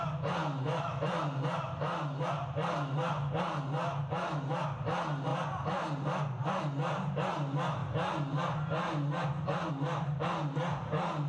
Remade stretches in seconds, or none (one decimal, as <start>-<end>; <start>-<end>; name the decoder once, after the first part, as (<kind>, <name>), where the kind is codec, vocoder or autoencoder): 0.4-1.0 (autoencoder, DAC-VAE)